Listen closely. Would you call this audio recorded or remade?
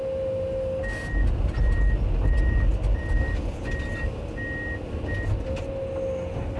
recorded